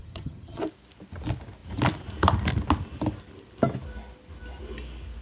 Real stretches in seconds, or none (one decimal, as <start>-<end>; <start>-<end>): 0.6-5.2